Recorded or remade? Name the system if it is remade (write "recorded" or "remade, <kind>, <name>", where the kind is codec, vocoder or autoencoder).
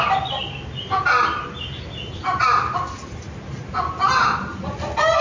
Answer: recorded